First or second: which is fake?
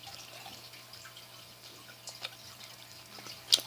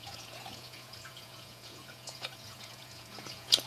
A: second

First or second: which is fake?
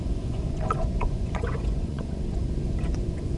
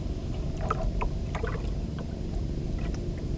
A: first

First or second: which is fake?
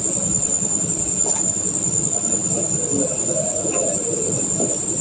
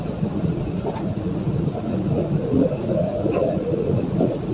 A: second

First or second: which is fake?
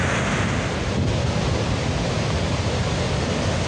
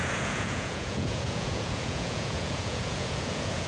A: second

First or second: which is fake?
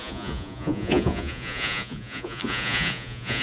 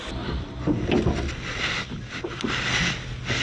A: first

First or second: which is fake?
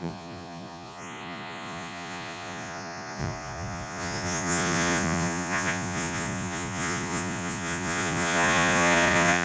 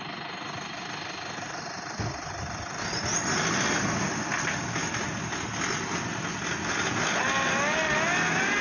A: first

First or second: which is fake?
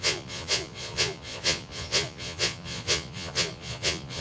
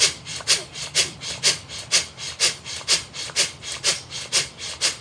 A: first